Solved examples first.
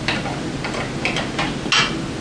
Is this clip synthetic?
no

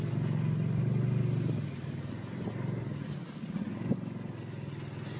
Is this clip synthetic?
no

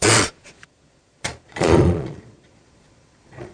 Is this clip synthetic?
yes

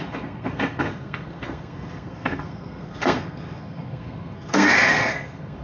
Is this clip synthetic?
yes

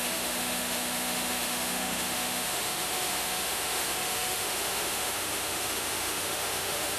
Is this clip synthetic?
yes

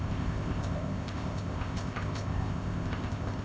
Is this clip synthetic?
yes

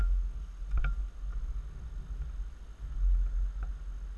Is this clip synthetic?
no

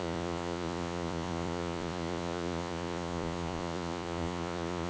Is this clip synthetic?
yes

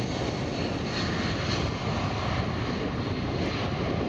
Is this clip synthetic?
no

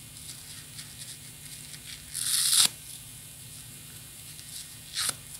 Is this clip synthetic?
no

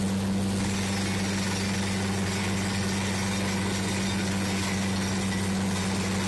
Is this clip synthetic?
no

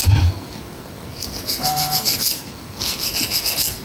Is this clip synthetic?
yes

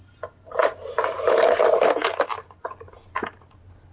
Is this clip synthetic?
no